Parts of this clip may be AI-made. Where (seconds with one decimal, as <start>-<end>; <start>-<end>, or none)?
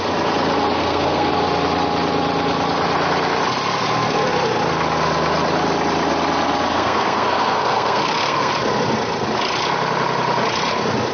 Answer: 0.8-1.3; 6.7-8.5